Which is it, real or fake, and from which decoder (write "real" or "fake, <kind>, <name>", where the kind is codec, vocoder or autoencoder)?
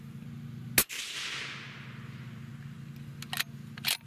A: real